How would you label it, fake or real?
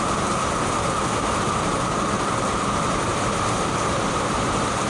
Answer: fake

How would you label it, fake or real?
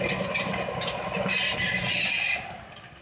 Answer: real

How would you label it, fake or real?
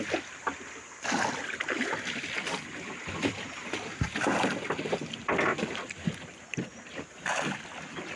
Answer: real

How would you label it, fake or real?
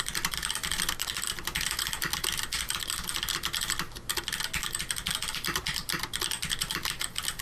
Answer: real